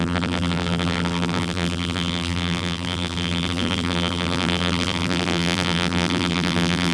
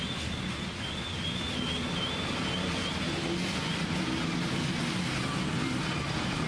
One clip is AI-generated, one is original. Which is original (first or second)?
second